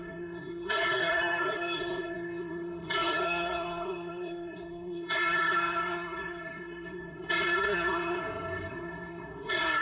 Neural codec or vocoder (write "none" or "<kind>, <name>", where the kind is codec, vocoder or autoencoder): codec, SNAC